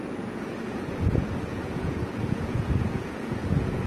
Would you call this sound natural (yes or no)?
no